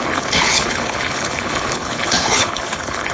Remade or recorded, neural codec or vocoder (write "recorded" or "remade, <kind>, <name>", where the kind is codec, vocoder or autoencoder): remade, codec, HILCodec